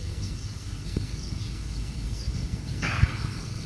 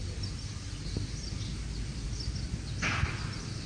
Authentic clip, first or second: second